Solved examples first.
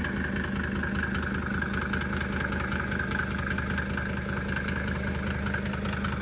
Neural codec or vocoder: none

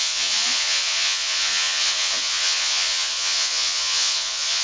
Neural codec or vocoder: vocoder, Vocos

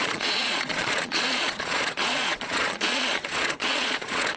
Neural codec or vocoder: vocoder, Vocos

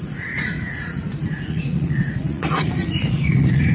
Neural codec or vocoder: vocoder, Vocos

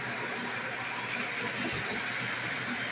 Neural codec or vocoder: none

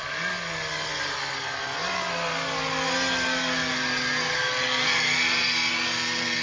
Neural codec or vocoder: none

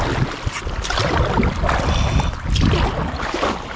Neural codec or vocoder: none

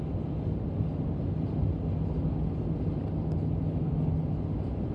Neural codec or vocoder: none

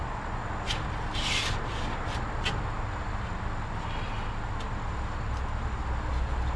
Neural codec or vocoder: none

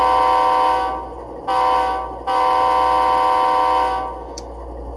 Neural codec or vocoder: none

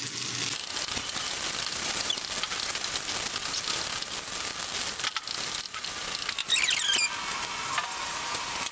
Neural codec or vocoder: none